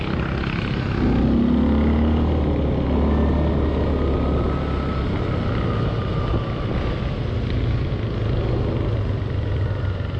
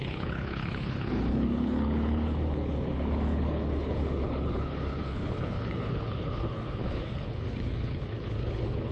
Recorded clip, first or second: first